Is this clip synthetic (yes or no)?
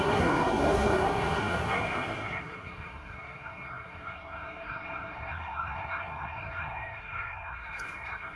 yes